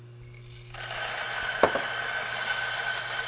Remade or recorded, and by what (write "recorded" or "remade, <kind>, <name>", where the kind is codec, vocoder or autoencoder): recorded